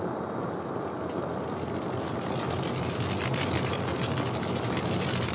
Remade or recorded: recorded